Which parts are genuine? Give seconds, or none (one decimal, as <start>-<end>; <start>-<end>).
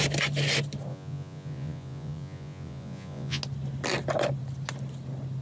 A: 0.0-0.9; 3.4-5.4